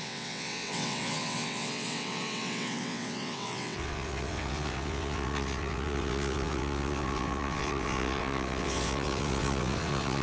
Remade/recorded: remade